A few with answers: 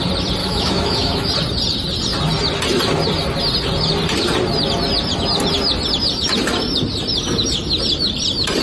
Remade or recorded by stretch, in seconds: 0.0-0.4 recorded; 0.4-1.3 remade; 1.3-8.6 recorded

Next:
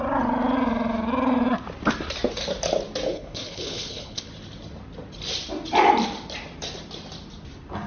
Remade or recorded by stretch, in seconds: 0.0-3.1 recorded; 3.1-4.3 remade; 4.3-7.9 recorded

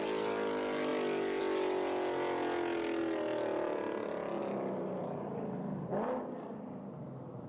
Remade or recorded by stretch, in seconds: 0.0-7.5 recorded

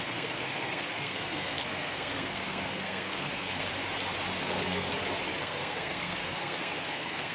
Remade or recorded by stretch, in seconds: 0.0-3.7 remade; 3.7-4.4 recorded; 4.4-4.9 remade; 4.9-5.4 recorded; 5.4-7.3 remade

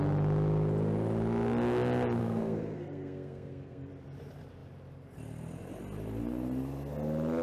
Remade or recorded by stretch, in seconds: 0.0-2.2 recorded; 2.2-3.9 remade; 3.9-7.4 recorded

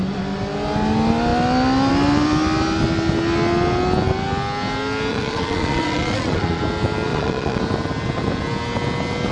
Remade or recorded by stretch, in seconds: 0.0-5.1 recorded; 5.1-6.6 remade; 6.6-7.1 recorded; 7.1-7.6 remade; 7.6-9.3 recorded